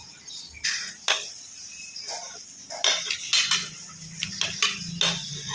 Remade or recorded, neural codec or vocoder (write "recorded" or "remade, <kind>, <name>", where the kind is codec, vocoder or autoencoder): recorded